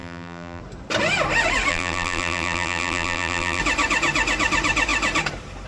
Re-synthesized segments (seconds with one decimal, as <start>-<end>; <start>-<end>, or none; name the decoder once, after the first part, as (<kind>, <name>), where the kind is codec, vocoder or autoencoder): 0.0-0.6 (vocoder, BigVGAN v2); 1.7-3.6